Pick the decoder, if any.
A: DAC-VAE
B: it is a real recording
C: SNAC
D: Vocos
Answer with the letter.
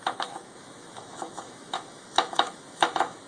A